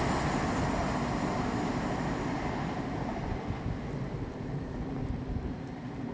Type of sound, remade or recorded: recorded